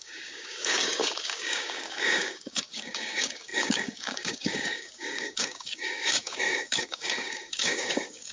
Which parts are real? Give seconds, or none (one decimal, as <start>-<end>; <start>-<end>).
none